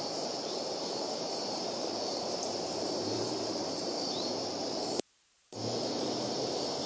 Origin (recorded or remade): remade